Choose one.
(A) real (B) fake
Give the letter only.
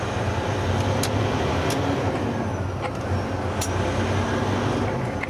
A